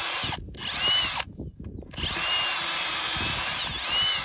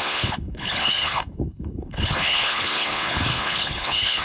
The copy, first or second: second